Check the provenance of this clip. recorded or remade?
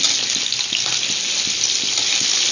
recorded